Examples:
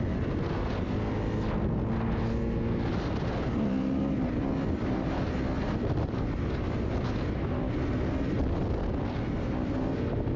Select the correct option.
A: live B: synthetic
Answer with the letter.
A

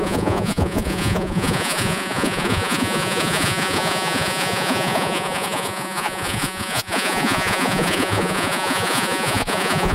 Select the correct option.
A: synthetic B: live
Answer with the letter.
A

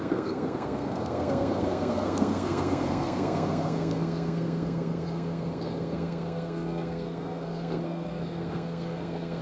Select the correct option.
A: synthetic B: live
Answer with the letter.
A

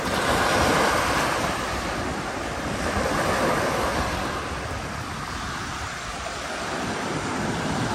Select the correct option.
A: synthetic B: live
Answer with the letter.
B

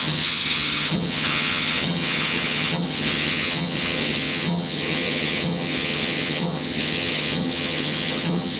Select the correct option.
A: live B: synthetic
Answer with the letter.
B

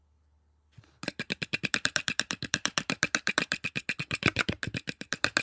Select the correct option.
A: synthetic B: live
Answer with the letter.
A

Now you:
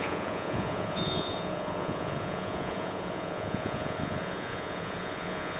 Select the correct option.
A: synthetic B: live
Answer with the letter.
A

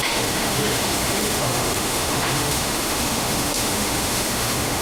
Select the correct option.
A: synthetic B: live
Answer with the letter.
A